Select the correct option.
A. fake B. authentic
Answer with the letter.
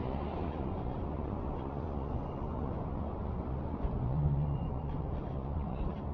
A